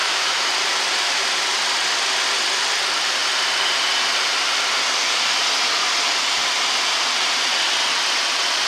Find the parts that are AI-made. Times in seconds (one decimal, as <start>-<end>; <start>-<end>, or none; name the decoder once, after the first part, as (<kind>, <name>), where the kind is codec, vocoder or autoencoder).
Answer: 0.0-0.5 (autoencoder, DAC-VAE)